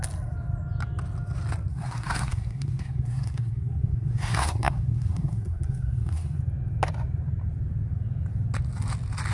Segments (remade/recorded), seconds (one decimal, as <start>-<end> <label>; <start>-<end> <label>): 0.0-1.7 recorded; 1.7-6.4 remade; 6.4-9.3 recorded